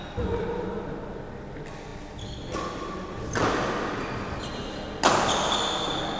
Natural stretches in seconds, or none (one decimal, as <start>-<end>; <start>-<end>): 0.0-6.2